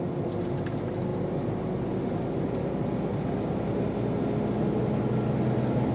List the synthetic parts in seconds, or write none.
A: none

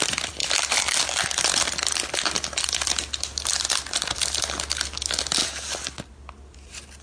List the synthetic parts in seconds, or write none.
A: none

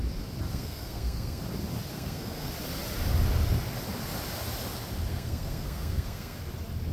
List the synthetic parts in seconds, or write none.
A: 0.5-1.4; 1.9-2.5; 5.1-6.4

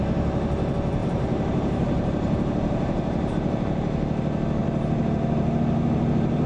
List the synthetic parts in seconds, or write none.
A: 1.0-3.3; 4.6-6.5